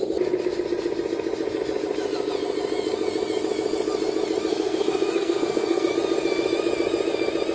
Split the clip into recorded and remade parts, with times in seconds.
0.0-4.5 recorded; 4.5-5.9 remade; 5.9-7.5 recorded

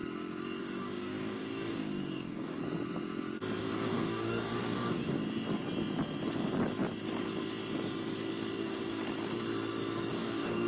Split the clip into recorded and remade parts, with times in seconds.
0.0-0.6 recorded; 0.6-2.6 remade; 2.6-3.6 recorded; 3.6-5.2 remade; 5.2-8.6 recorded; 8.6-9.0 remade; 9.0-10.1 recorded; 10.1-10.7 remade